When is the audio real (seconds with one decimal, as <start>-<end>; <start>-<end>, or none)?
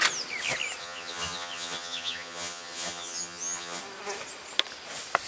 0.0-0.8; 3.8-5.3